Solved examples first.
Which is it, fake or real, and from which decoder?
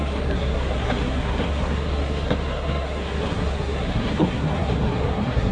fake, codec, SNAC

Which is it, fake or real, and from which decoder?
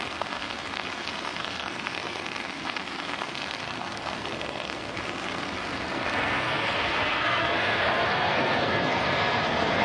fake, codec, SNAC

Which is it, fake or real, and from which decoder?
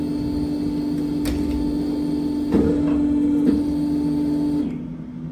real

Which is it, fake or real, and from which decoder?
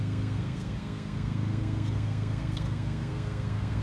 fake, codec, SNAC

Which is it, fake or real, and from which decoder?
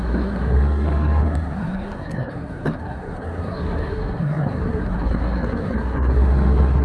fake, codec, SNAC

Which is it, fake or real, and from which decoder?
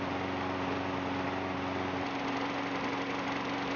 real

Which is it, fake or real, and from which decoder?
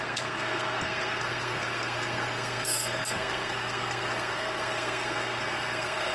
fake, codec, SNAC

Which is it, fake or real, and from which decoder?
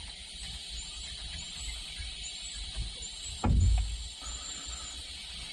real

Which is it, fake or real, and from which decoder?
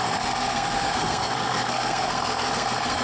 fake, codec, SNAC